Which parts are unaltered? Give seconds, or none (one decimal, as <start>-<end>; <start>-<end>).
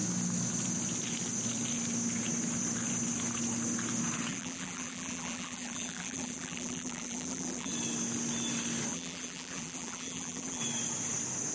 0.0-4.3; 7.7-8.9; 10.6-11.5